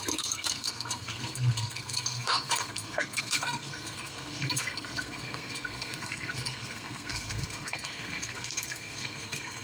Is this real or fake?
fake